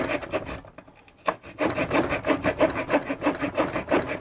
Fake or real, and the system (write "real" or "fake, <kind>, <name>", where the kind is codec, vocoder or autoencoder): real